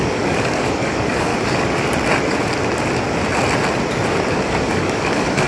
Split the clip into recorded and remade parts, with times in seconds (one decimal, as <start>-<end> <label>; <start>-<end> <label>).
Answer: 0.0-1.3 remade; 1.3-4.3 recorded; 4.3-5.5 remade